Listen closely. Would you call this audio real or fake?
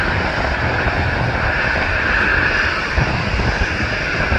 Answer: real